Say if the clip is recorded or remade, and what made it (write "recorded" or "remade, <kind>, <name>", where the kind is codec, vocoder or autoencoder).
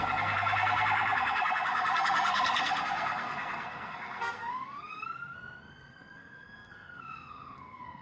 remade, codec, SNAC